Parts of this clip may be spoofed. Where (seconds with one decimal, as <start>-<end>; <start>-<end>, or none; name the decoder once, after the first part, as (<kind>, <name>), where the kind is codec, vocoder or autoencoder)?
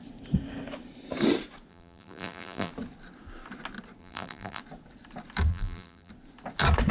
1.7-2.7 (vocoder, BigVGAN v2); 4.0-4.6; 5.5-6.1